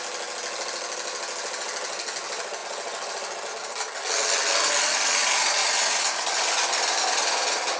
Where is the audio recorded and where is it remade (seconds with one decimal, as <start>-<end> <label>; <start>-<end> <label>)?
0.0-7.8 recorded